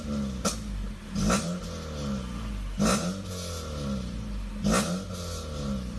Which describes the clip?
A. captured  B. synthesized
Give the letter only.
A